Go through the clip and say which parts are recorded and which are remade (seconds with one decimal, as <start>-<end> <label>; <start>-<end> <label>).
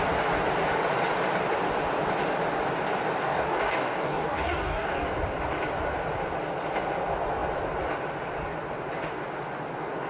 0.0-3.2 recorded; 3.2-5.1 remade; 5.1-10.1 recorded